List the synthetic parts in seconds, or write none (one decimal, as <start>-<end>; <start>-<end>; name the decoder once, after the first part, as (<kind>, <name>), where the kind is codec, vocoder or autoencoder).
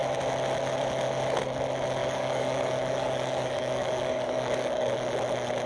2.0-4.9 (codec, DAC)